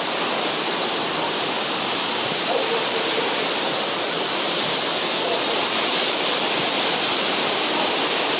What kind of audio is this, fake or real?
real